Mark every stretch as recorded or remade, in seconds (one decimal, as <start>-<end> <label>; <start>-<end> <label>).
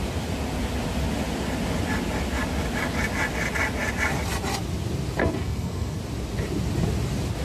0.0-5.2 recorded; 5.2-6.0 remade; 6.0-7.4 recorded